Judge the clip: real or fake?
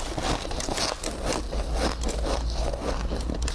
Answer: real